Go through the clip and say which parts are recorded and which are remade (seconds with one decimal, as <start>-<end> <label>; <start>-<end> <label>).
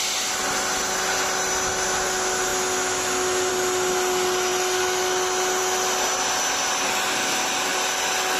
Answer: 0.0-8.4 recorded